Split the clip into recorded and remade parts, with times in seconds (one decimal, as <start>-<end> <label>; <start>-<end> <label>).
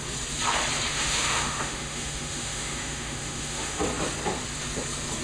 0.0-0.9 recorded; 0.9-3.8 remade; 3.8-5.2 recorded